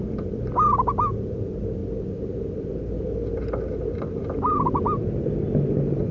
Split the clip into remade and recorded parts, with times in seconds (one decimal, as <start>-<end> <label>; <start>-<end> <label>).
0.0-6.1 recorded